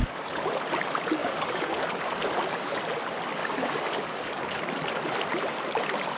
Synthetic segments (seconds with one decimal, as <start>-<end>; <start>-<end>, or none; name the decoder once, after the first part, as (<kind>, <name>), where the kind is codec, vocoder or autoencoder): 0.0-0.5 (codec, DAC); 1.2-2.8; 3.4-4.6